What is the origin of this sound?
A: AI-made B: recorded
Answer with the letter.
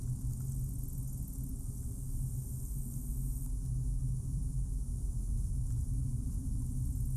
B